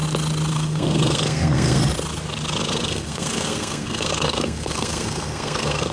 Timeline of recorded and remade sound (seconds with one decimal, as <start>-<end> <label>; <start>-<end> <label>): 0.0-0.5 recorded; 0.5-1.8 remade; 1.8-2.7 recorded; 2.7-5.9 remade